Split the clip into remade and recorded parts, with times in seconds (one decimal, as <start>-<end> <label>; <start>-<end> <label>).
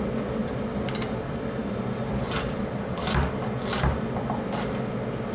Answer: 0.0-0.4 recorded; 0.4-3.6 remade; 3.6-5.3 recorded